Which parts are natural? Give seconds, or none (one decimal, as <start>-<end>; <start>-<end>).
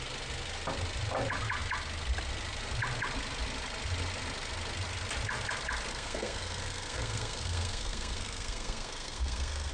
0.0-5.9